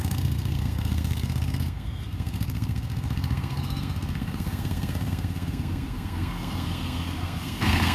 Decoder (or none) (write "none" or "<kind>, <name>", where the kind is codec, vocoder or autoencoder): codec, SNAC